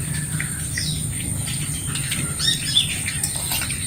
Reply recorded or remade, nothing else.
recorded